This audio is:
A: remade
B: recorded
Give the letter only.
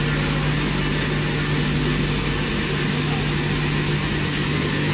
B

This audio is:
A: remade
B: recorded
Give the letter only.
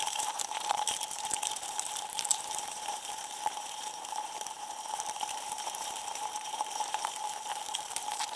A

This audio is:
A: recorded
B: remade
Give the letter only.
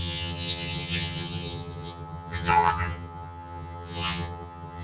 B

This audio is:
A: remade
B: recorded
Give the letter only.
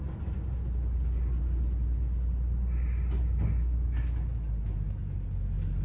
B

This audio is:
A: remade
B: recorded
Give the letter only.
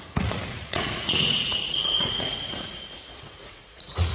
A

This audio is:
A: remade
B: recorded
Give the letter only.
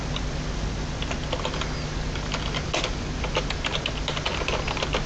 B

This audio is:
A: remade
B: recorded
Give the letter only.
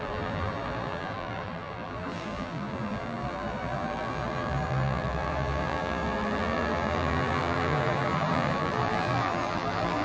A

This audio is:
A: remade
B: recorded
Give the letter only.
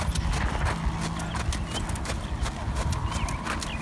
B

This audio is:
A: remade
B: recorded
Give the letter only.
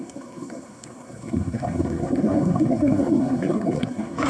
A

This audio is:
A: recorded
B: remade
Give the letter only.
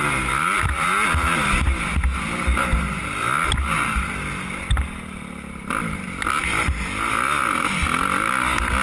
A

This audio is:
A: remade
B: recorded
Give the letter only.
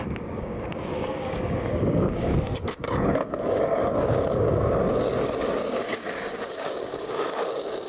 A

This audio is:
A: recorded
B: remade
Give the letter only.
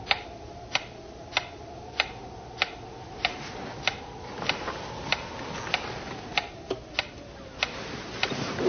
A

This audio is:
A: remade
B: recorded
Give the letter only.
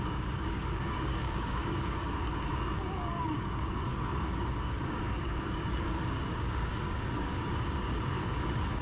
A